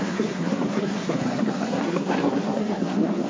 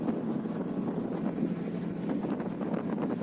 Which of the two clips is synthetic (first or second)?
first